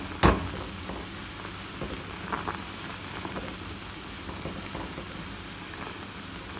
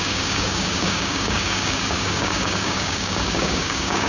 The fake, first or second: second